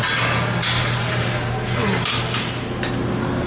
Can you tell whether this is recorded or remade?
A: recorded